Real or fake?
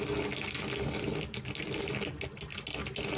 real